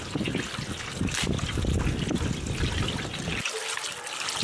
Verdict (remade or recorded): recorded